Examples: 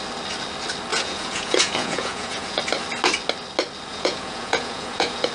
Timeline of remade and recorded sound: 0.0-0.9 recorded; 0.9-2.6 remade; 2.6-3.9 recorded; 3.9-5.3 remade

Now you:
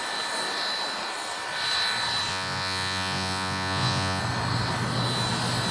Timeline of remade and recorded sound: 0.0-2.3 recorded; 2.3-4.2 remade; 4.2-5.7 recorded

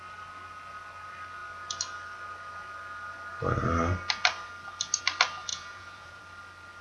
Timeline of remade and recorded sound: 0.0-5.5 recorded; 5.5-6.2 remade; 6.2-6.8 recorded

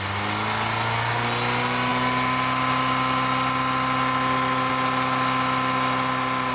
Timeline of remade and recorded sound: 0.0-6.5 recorded

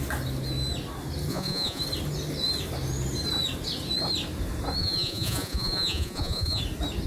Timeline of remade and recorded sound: 0.0-1.3 recorded; 1.3-1.8 remade; 1.8-4.8 recorded; 4.8-6.6 remade; 6.6-7.1 recorded

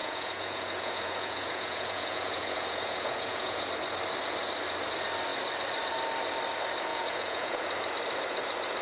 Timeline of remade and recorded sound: 0.0-3.7 remade; 3.7-6.9 recorded; 6.9-7.6 remade; 7.6-8.8 recorded